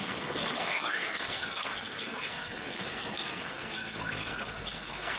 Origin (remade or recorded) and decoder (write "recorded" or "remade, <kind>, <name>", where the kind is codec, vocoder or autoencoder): remade, codec, SNAC